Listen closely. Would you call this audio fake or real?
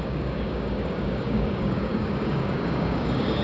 fake